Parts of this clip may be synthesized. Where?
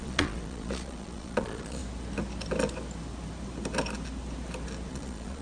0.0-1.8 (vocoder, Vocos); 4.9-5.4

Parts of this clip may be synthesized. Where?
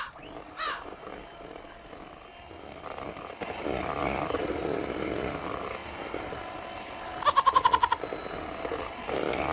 5.8-6.3 (vocoder, BigVGAN v2)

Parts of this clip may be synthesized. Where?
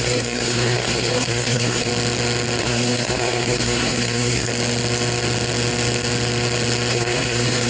0.0-1.9 (codec, SNAC); 2.6-4.5; 6.9-7.7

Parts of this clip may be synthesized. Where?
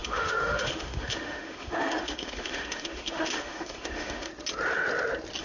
0.0-4.3 (autoencoder, DAC-VAE)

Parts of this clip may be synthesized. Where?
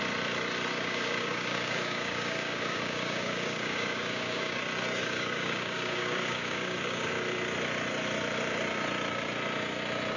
0.7-4.6 (codec, DAC); 5.0-7.1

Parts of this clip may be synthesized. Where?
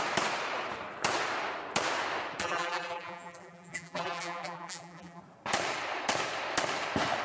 2.4-5.2 (vocoder, BigVGAN v2)